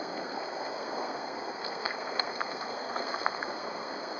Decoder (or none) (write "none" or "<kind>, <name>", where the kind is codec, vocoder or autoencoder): codec, SNAC